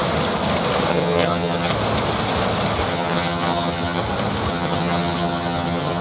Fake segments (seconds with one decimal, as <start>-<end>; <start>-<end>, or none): 0.9-1.7; 2.9-4.0; 4.5-6.0